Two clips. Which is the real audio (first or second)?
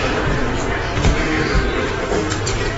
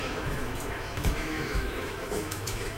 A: first